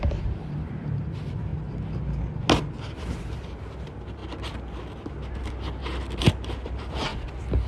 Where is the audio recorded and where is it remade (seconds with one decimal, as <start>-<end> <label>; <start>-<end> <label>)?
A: 0.0-1.5 remade; 1.5-3.1 recorded; 3.1-4.2 remade; 4.2-6.2 recorded; 6.2-7.1 remade; 7.1-7.7 recorded